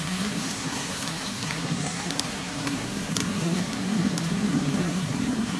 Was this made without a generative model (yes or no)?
no